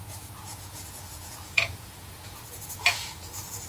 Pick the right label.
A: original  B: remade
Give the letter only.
B